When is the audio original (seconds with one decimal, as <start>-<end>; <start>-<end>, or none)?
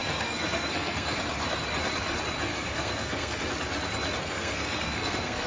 1.2-2.5; 3.4-4.2